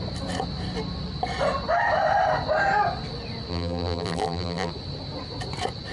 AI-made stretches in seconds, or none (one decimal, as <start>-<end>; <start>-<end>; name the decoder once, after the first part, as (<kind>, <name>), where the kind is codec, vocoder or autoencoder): 3.5-4.7 (vocoder, BigVGAN v2)